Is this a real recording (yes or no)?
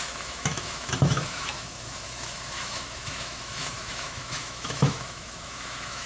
no